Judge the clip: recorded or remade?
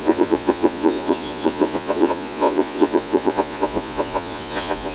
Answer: remade